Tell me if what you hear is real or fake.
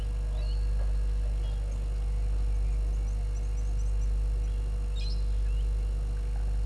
real